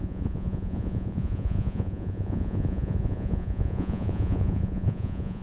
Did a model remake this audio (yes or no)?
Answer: yes